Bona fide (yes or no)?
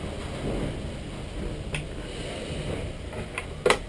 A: yes